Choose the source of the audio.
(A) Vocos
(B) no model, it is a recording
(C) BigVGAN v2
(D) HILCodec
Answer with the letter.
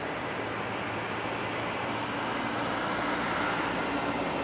C